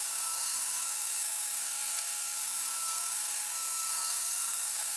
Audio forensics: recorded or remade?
remade